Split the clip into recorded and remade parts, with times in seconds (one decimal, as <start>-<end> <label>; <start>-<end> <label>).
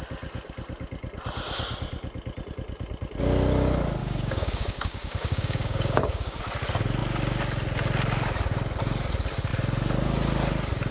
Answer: 0.0-4.0 recorded; 4.0-6.4 remade; 6.4-10.9 recorded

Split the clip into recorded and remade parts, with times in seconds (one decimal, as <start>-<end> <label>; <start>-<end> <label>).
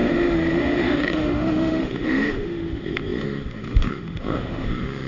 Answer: 0.0-5.1 remade